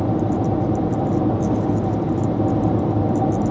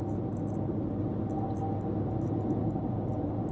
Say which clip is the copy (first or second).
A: first